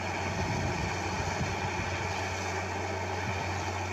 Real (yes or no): yes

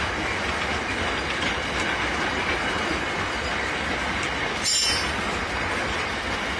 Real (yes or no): yes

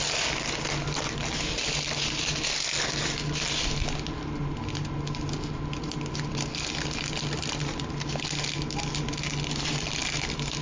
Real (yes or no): yes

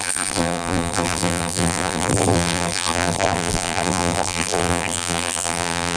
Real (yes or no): no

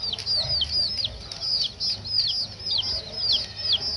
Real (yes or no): yes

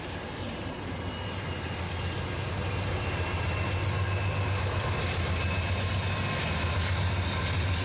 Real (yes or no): yes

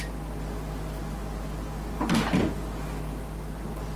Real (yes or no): yes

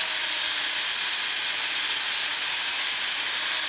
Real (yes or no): no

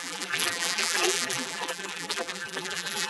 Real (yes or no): no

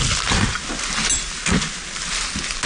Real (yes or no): yes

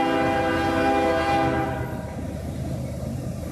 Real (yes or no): yes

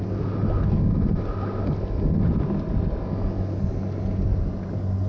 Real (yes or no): yes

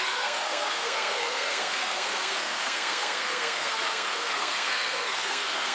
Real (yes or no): no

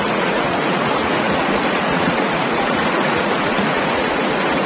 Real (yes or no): no